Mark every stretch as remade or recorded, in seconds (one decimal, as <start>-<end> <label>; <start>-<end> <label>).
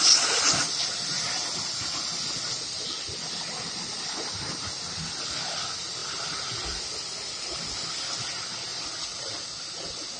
0.0-10.2 recorded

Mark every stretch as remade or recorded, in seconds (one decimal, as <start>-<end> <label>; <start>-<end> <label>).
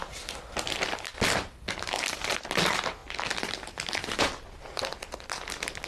0.0-5.9 recorded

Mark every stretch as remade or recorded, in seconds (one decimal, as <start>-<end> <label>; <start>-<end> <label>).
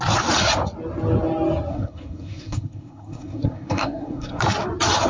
0.0-1.7 recorded; 1.7-4.4 remade; 4.4-5.1 recorded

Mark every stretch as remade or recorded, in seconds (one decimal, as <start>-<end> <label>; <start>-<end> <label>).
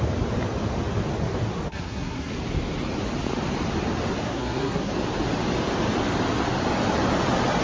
0.0-1.7 recorded; 1.7-2.3 remade; 2.3-4.2 recorded; 4.2-4.9 remade; 4.9-7.6 recorded